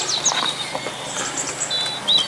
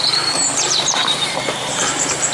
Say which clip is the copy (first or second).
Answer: second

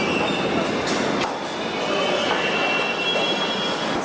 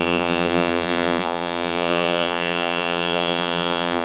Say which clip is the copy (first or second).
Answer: second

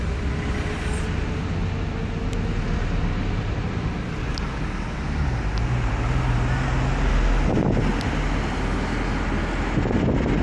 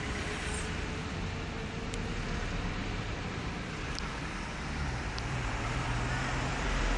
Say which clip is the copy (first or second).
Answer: second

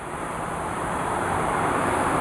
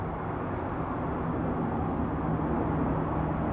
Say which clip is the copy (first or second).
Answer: first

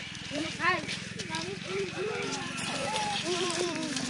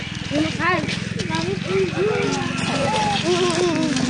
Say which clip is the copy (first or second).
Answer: first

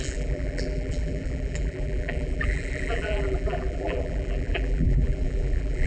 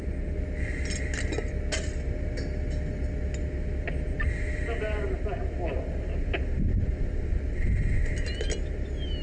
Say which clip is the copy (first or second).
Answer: first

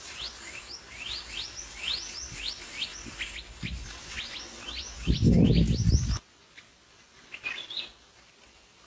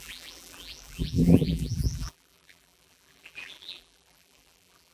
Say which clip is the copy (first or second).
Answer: second